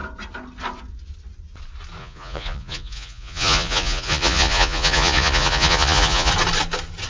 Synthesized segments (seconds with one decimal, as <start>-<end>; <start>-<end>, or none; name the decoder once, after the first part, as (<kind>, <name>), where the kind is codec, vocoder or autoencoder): 2.0-6.3 (vocoder, Vocos)